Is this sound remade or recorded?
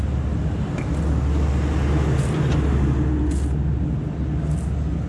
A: recorded